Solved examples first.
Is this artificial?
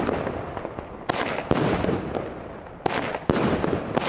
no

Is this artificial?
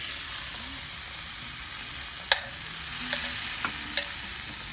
no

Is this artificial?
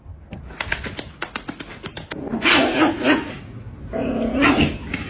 no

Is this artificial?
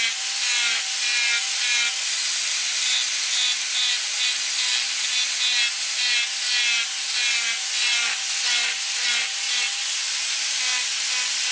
no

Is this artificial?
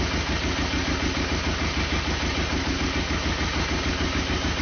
no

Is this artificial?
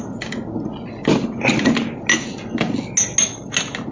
no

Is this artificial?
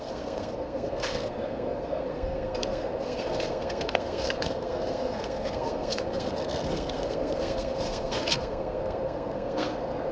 yes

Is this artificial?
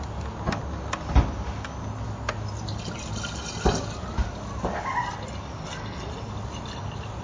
no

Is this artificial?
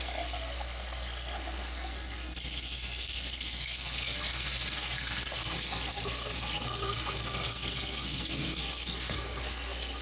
yes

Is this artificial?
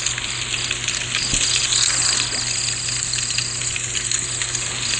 no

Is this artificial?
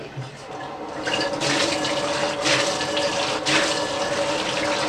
no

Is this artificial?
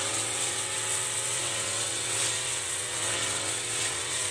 yes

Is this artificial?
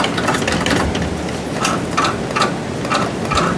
no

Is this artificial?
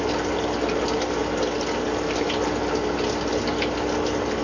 no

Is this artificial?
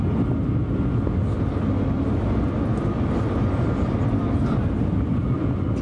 no